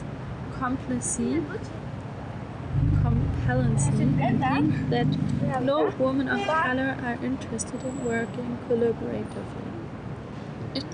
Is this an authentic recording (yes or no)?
yes